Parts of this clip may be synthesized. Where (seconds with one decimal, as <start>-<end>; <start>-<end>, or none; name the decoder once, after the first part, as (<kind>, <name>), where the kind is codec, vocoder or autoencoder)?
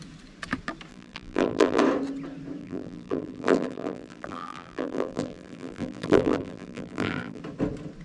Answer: 0.9-1.8 (vocoder, BigVGAN v2); 2.6-7.4